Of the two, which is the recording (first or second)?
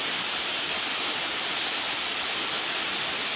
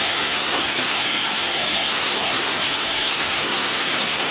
first